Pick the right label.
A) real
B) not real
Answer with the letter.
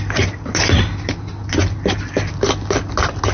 A